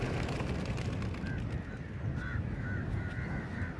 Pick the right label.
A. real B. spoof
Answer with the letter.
A